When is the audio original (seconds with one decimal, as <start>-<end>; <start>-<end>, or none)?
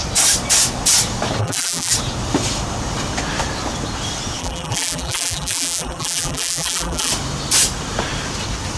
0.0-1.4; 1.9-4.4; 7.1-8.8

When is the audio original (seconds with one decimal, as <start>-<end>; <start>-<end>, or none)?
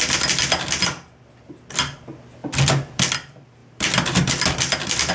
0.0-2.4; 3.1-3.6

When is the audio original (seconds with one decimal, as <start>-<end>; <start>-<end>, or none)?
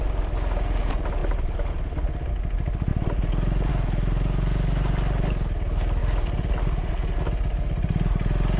0.0-1.2; 2.3-6.0; 6.9-8.6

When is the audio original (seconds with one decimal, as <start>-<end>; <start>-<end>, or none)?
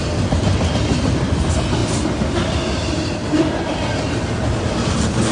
0.0-1.8; 4.5-5.3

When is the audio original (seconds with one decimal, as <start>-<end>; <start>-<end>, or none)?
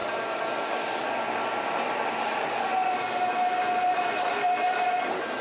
0.0-1.2; 2.7-4.1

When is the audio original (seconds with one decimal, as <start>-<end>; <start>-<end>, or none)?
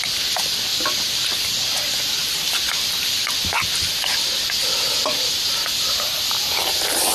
2.2-6.5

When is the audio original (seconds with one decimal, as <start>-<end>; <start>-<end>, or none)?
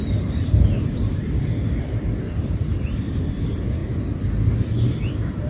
3.3-3.8; 4.3-5.5